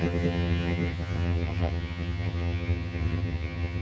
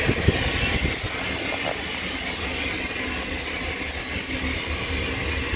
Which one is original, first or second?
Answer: second